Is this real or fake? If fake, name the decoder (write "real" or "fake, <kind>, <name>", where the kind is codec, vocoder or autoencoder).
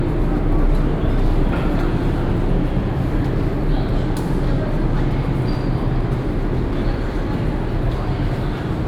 real